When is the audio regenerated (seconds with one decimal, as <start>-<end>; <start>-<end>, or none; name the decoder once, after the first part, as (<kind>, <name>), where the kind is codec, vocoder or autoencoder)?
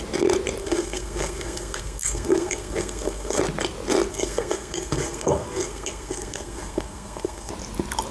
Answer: 0.6-3.4 (codec, SNAC); 4.1-7.5